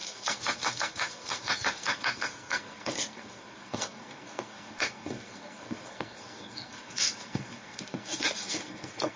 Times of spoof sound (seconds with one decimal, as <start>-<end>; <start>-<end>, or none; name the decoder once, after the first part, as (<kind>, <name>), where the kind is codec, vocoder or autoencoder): 0.0-9.2 (codec, SNAC)